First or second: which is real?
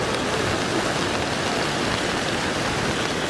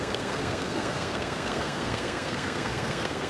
first